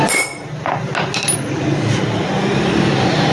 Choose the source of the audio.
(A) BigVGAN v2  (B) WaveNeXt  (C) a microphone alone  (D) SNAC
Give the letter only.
C